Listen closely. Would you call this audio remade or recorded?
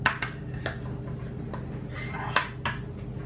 recorded